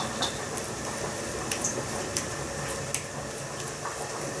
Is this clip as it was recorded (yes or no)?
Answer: yes